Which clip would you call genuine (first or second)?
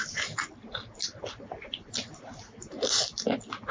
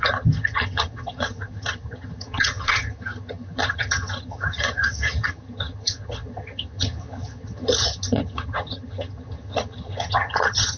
first